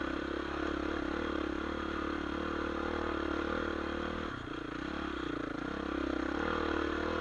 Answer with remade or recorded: recorded